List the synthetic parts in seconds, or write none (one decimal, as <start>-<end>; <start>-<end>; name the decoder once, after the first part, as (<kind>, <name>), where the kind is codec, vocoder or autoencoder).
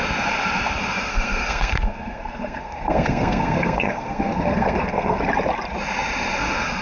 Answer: 1.1-5.2 (codec, SNAC)